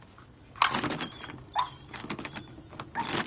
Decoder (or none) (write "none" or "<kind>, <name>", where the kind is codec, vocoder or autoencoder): none